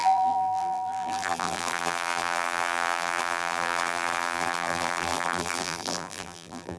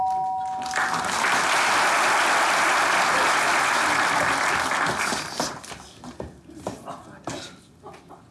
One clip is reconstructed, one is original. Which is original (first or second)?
second